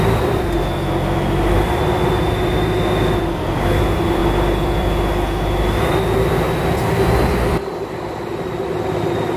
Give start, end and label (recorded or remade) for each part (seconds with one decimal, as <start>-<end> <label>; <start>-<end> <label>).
0.0-4.2 remade; 4.2-4.8 recorded; 4.8-9.4 remade